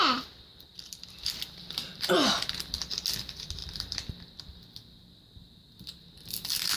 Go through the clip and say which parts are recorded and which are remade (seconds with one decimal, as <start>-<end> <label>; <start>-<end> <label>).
0.0-0.5 recorded; 0.5-2.7 remade; 2.7-3.6 recorded; 3.6-4.1 remade; 4.1-6.8 recorded

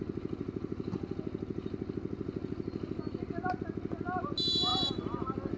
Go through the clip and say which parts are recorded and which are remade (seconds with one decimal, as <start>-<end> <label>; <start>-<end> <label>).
0.0-4.7 recorded; 4.7-5.6 remade

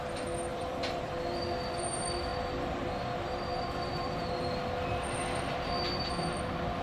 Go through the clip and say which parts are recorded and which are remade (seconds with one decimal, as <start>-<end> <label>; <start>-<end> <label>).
0.0-0.5 recorded; 0.5-1.2 remade; 1.2-6.8 recorded

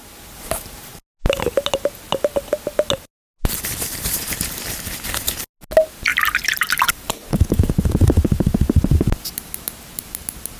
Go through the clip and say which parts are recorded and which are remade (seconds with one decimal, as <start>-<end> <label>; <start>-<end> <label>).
0.0-6.1 recorded; 6.1-7.2 remade; 7.2-10.6 recorded

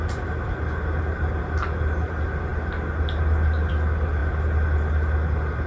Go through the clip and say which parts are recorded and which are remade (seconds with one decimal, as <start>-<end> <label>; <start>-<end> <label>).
0.0-5.7 recorded

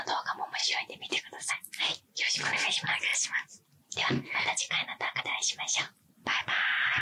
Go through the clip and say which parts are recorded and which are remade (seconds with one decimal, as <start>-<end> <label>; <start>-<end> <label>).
0.0-0.6 recorded; 0.6-1.5 remade; 1.5-7.0 recorded

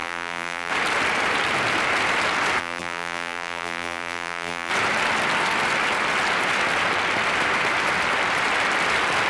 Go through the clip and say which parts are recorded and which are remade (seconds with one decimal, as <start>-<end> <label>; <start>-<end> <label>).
0.0-0.7 remade; 0.7-2.6 recorded; 2.6-4.7 remade; 4.7-9.3 recorded